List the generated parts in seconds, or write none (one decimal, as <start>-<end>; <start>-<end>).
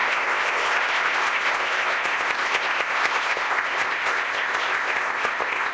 0.0-5.7